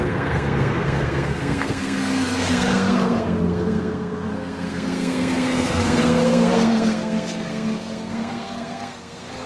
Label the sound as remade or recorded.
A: remade